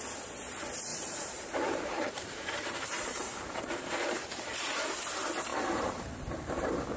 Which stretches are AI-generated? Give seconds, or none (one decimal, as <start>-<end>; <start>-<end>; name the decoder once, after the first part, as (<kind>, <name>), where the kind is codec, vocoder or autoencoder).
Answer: 0.9-5.1 (vocoder, BigVGAN v2)